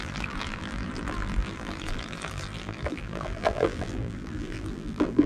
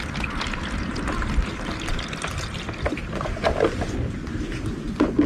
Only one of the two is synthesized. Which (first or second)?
first